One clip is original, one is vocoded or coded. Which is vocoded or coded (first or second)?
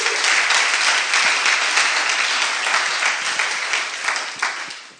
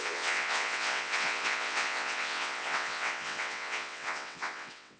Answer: second